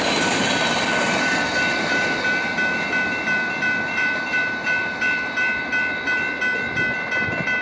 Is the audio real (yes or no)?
no